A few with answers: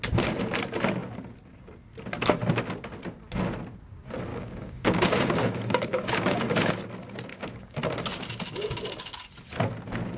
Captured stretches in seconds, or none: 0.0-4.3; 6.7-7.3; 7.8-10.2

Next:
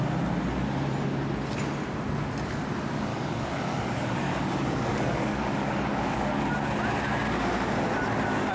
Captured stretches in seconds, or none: 0.0-3.1; 6.3-8.5